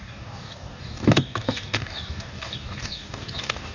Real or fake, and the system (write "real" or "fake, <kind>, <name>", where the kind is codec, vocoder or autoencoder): fake, codec, DAC